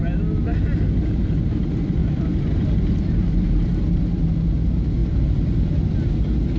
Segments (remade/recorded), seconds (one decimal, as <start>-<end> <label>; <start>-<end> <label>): 0.0-2.0 recorded; 2.0-4.3 remade; 4.3-5.0 recorded; 5.0-5.7 remade; 5.7-6.6 recorded